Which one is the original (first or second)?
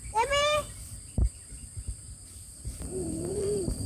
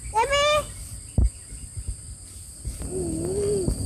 second